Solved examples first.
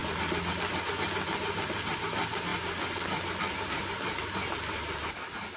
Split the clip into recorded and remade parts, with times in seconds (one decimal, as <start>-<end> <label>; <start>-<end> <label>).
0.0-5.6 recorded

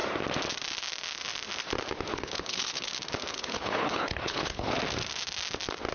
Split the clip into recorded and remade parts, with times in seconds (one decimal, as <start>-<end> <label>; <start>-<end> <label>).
0.0-2.1 recorded; 2.1-2.9 remade; 2.9-3.3 recorded; 3.3-4.8 remade; 4.8-5.9 recorded

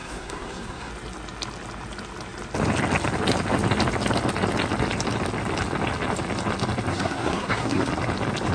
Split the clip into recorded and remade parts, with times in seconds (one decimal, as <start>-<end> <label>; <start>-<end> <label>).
0.0-0.9 remade; 0.9-6.9 recorded; 6.9-7.9 remade; 7.9-8.5 recorded

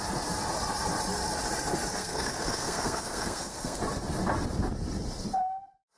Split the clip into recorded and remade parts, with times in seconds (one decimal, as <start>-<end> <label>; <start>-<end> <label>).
0.0-2.0 recorded; 2.0-3.8 remade; 3.8-6.0 recorded

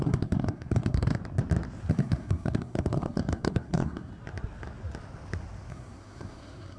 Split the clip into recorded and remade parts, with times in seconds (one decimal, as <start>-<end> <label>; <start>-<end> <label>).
0.0-1.2 remade; 1.2-1.9 recorded; 1.9-4.1 remade; 4.1-5.7 recorded; 5.7-6.8 remade